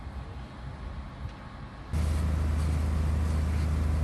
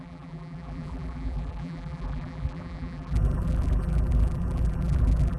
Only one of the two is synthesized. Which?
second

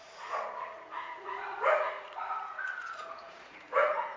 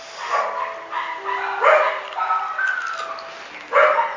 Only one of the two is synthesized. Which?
first